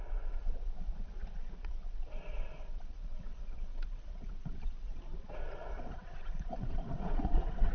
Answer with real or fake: fake